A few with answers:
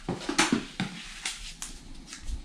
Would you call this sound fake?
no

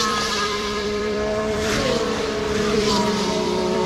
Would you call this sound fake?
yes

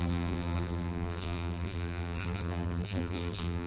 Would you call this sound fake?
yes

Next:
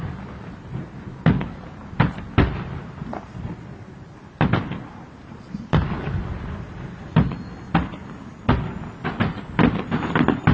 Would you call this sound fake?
no